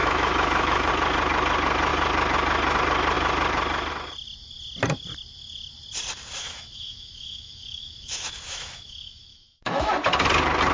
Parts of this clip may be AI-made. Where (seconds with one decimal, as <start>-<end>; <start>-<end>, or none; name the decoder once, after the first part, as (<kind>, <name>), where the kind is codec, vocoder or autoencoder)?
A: 0.0-0.9 (autoencoder, DAC-VAE); 6.4-9.9